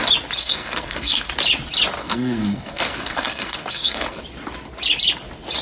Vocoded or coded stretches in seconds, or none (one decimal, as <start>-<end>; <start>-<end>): 0.4-1.3; 2.0-4.2